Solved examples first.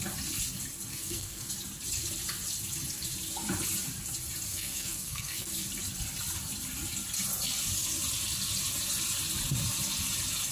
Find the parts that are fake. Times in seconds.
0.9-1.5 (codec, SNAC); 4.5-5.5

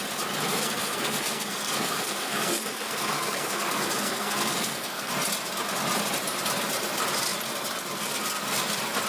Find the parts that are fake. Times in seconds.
0.5-5.1 (codec, SNAC)

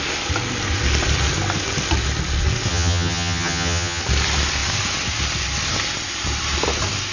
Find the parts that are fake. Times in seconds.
2.7-4.0 (vocoder, HiFi-GAN)

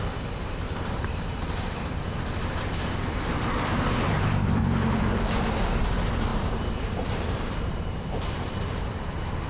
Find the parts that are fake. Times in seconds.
0.0-4.6 (vocoder, BigVGAN v2); 5.8-9.5

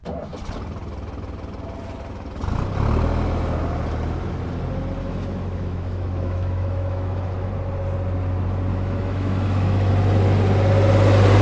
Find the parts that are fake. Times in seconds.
5.0-7.5 (autoencoder, DAC-VAE); 8.7-9.9

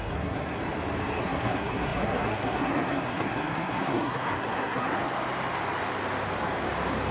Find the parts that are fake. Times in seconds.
0.0-0.6 (codec, SNAC); 1.2-5.0

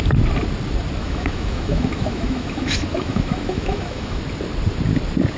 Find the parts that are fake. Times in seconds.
1.0-4.2 (autoencoder, DAC-VAE)